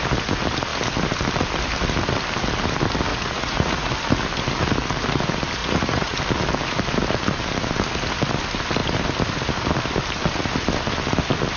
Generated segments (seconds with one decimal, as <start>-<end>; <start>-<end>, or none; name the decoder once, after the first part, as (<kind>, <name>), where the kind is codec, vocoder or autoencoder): 3.1-3.9 (vocoder, Vocos); 5.6-6.2